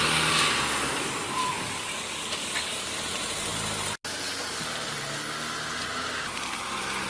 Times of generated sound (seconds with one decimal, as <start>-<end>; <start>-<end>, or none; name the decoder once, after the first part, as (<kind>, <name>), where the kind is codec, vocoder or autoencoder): 1.4-3.0 (codec, DAC)